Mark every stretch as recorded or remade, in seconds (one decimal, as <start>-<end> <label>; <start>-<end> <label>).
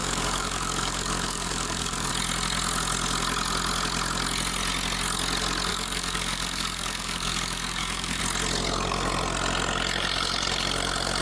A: 0.0-2.1 remade; 2.1-5.7 recorded; 5.7-8.2 remade; 8.2-11.2 recorded